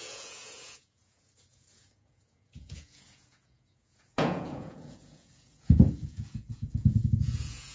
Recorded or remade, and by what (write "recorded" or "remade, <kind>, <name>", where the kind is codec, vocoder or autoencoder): remade, vocoder, Vocos